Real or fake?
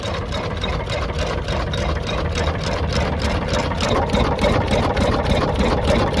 real